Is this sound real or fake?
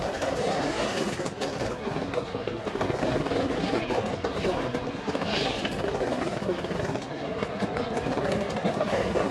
fake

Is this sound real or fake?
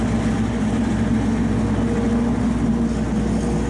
real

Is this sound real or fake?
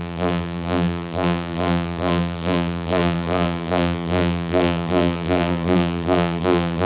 fake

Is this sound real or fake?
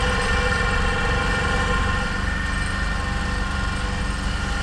real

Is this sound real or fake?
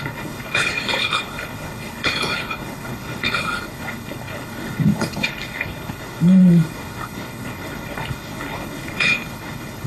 fake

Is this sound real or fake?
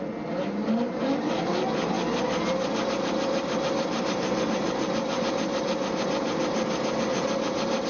real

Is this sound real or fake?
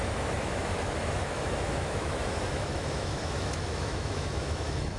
fake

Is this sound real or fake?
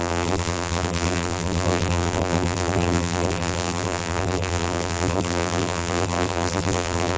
fake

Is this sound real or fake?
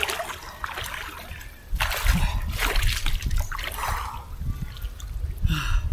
real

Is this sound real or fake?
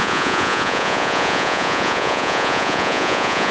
fake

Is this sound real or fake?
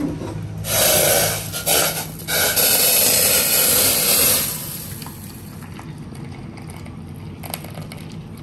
real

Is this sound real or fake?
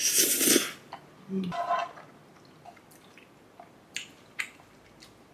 real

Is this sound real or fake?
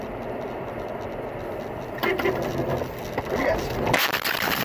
real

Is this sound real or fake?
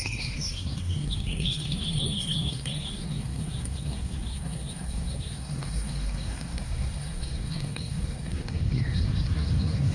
fake